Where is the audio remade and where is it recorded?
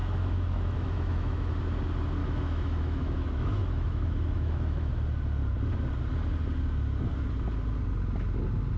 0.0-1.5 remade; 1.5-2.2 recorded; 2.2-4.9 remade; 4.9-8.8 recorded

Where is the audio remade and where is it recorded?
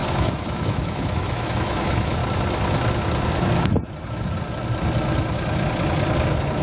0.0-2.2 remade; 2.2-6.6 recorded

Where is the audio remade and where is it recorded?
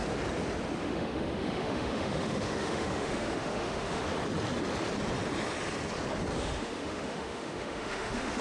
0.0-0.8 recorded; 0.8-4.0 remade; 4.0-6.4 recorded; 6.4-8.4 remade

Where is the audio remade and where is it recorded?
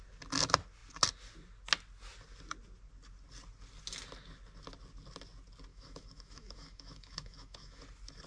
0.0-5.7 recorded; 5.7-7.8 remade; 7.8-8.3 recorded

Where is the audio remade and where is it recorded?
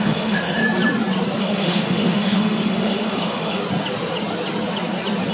0.0-0.6 remade; 0.6-1.4 recorded; 1.4-3.6 remade; 3.6-5.3 recorded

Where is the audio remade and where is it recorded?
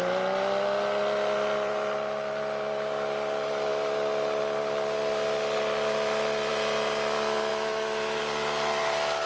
0.0-7.5 recorded; 7.5-8.2 remade; 8.2-9.3 recorded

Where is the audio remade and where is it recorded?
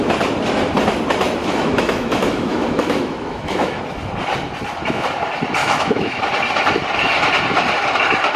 0.0-1.4 recorded; 1.4-3.8 remade; 3.8-5.6 recorded; 5.6-6.2 remade; 6.2-8.4 recorded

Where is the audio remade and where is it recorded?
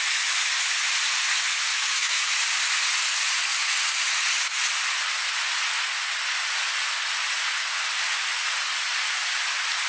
0.0-1.7 recorded; 1.7-2.3 remade; 2.3-9.9 recorded